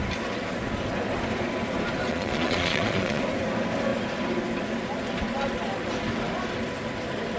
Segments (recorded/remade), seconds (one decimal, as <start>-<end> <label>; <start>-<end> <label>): 0.0-2.1 recorded; 2.1-3.2 remade; 3.2-7.4 recorded